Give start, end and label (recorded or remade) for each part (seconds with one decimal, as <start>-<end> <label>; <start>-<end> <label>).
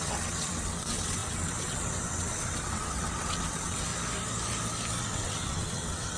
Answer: 0.0-3.9 remade; 3.9-5.0 recorded; 5.0-6.2 remade